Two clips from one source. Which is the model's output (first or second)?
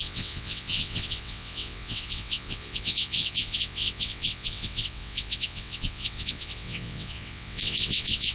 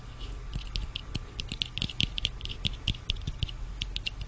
first